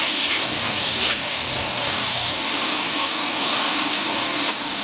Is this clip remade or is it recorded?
remade